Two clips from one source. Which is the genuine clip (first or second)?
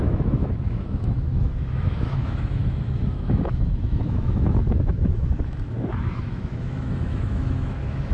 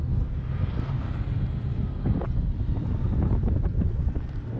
second